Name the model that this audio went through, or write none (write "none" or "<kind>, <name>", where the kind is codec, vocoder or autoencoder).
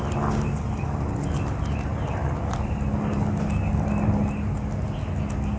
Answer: none